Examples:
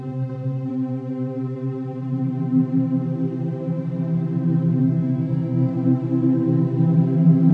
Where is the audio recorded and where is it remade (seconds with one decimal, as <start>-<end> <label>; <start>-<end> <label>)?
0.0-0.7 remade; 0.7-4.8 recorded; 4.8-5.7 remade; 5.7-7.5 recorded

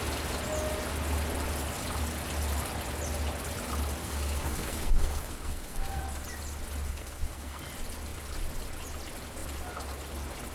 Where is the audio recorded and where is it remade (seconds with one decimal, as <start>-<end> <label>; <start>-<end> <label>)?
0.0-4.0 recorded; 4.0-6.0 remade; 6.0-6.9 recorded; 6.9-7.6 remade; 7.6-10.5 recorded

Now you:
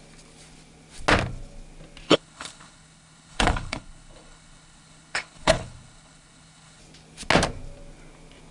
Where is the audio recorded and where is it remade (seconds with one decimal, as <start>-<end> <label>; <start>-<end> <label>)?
0.0-2.1 recorded; 2.1-6.8 remade; 6.8-8.5 recorded

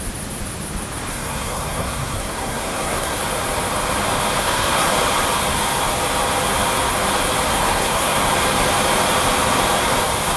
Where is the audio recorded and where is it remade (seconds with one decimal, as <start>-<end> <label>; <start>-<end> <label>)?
0.0-1.1 recorded; 1.1-3.2 remade; 3.2-4.4 recorded; 4.4-4.9 remade; 4.9-7.5 recorded; 7.5-8.2 remade; 8.2-10.4 recorded

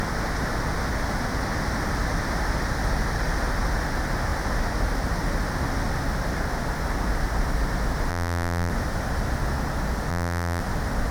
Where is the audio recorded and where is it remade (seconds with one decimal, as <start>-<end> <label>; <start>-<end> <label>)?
0.0-8.1 recorded; 8.1-8.7 remade; 8.7-10.1 recorded; 10.1-10.6 remade; 10.6-11.1 recorded